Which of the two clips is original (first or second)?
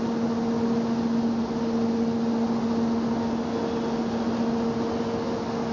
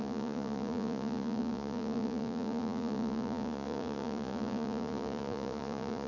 first